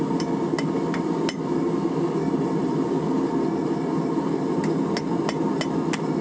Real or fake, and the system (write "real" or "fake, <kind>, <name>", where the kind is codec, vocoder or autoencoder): real